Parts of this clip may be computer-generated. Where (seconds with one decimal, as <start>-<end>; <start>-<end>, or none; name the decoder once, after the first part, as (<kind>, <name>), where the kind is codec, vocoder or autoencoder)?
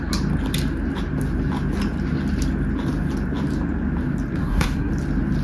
4.4-4.9 (codec, SNAC)